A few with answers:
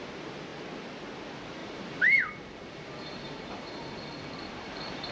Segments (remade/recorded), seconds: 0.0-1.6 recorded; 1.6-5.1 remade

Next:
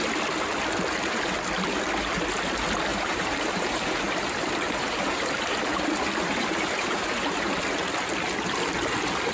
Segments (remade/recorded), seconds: 0.0-2.9 recorded; 2.9-7.5 remade; 7.5-9.3 recorded

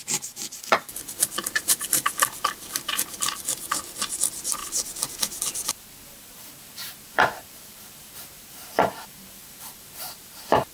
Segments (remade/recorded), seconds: 0.0-4.6 remade; 4.6-6.2 recorded; 6.2-10.7 remade

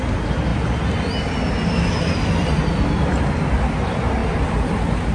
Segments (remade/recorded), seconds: 0.0-4.2 recorded; 4.2-5.1 remade